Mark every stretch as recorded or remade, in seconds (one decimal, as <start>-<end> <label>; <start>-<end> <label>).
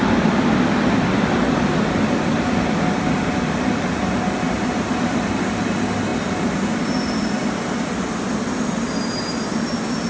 0.0-10.1 recorded